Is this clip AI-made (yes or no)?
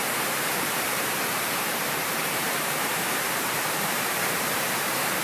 yes